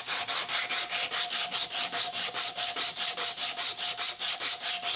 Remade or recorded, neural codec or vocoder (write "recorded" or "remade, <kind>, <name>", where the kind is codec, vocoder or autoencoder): recorded